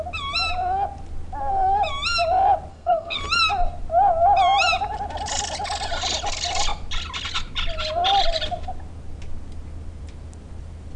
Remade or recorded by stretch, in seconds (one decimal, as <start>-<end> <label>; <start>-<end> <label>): 0.0-2.7 recorded; 2.7-3.2 remade; 3.2-11.0 recorded